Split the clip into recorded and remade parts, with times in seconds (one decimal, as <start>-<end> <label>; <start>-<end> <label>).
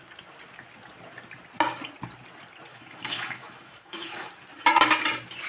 0.0-2.7 recorded; 2.7-4.3 remade; 4.3-5.5 recorded